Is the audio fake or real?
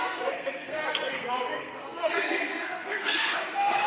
fake